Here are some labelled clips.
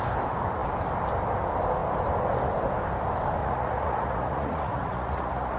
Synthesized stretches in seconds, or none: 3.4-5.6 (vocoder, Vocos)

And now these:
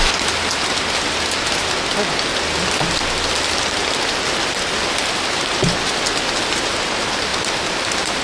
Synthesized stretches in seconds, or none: none

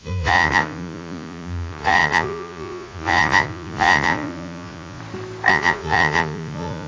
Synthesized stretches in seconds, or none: 0.0-5.0 (vocoder, Vocos); 5.5-6.9

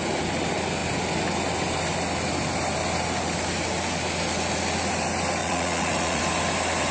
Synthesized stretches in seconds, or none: 5.4-6.2 (vocoder, Vocos)

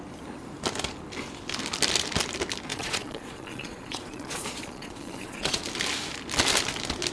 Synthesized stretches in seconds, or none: 2.7-5.6 (vocoder, Vocos)

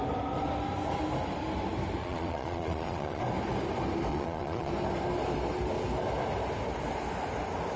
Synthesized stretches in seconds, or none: 2.0-3.2 (vocoder, Vocos); 4.1-4.7